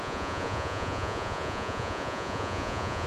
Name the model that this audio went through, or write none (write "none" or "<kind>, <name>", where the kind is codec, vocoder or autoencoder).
vocoder, Vocos